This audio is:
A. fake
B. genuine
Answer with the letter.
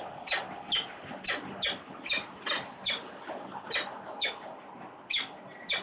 B